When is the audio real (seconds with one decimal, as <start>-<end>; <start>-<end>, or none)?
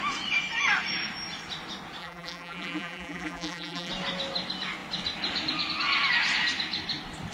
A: 0.0-2.0; 3.9-7.3